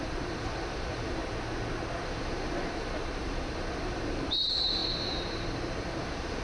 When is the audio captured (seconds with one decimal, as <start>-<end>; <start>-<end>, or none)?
1.2-2.0